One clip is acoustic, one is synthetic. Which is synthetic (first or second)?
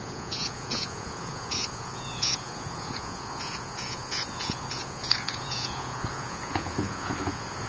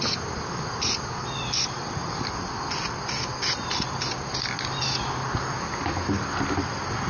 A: first